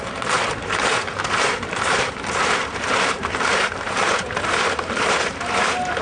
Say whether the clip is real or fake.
fake